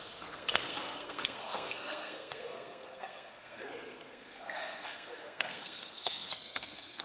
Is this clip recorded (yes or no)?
no